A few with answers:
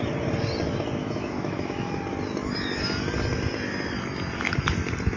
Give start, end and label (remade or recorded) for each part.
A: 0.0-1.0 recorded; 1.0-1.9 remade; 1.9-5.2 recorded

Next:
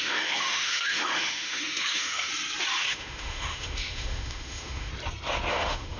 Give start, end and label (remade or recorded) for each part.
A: 0.0-2.3 remade; 2.3-2.8 recorded; 2.8-4.9 remade; 4.9-5.5 recorded; 5.5-6.0 remade

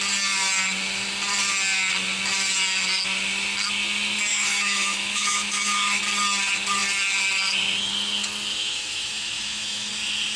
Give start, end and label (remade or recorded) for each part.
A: 0.0-4.3 recorded; 4.3-6.0 remade; 6.0-8.6 recorded; 8.6-9.9 remade; 9.9-10.4 recorded

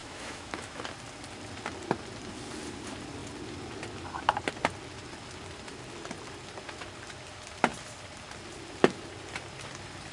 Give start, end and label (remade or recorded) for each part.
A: 0.0-0.8 remade; 0.8-10.1 recorded

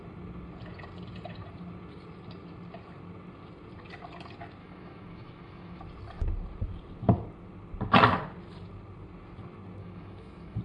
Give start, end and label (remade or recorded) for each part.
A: 0.0-4.6 recorded; 4.6-5.8 remade; 5.8-9.8 recorded; 9.8-10.6 remade

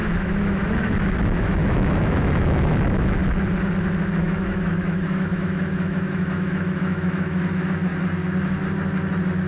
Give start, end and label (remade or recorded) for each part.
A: 0.0-3.2 remade; 3.2-4.2 recorded; 4.2-7.9 remade; 7.9-9.5 recorded